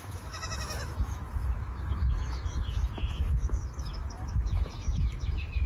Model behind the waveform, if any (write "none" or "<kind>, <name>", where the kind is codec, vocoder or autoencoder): autoencoder, DAC-VAE